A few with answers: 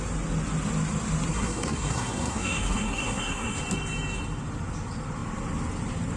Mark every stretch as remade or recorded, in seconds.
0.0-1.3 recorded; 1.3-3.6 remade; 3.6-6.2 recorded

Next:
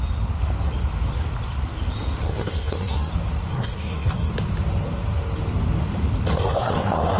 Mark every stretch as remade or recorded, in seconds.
0.0-2.2 recorded; 2.2-3.1 remade; 3.1-3.5 recorded; 3.5-4.3 remade; 4.3-6.3 recorded; 6.3-7.2 remade

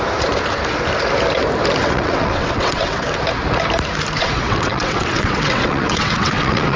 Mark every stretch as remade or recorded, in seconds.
0.0-1.8 recorded; 1.8-3.2 remade; 3.2-4.2 recorded; 4.2-6.8 remade